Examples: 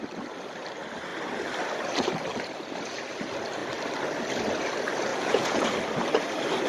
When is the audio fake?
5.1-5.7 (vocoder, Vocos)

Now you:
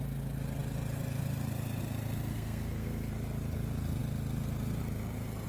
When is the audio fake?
2.3-3.1 (codec, SNAC)

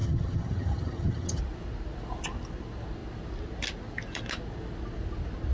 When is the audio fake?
0.0-1.4 (vocoder, HiFi-GAN)

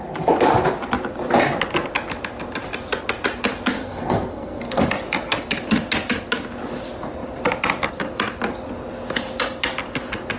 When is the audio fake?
3.8-4.8 (codec, SNAC)

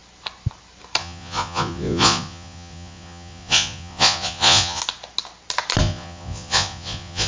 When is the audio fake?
1.0-4.8 (vocoder, Vocos); 5.8-7.3

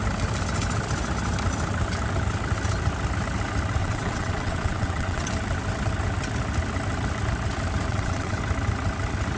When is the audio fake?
3.8-5.3 (vocoder, WaveNeXt); 7.9-8.4